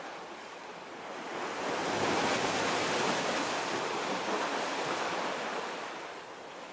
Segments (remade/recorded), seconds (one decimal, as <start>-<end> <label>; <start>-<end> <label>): 0.0-6.7 recorded